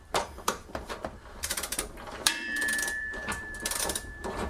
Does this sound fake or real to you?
fake